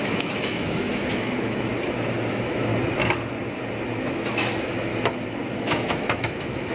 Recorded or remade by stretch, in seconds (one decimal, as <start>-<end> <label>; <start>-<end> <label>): 0.0-1.7 remade; 1.7-2.3 recorded; 2.3-2.7 remade; 2.7-4.0 recorded; 4.0-4.9 remade; 4.9-5.5 recorded; 5.5-6.7 remade